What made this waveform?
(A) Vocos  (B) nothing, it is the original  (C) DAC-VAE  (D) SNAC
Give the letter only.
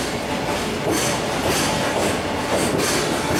B